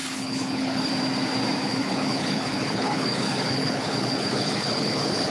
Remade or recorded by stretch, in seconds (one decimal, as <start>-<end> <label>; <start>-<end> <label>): 0.0-0.9 remade; 0.9-1.7 recorded; 1.7-5.3 remade